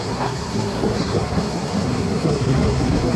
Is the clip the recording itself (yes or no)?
no